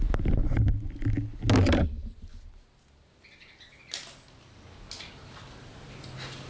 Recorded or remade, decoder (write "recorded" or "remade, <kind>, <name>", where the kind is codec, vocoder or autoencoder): recorded